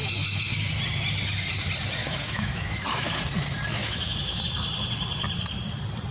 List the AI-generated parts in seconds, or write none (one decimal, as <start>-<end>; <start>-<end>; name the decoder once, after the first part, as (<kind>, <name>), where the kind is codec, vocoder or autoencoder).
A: 0.0-0.7 (autoencoder, DAC-VAE); 2.0-3.1; 3.8-4.4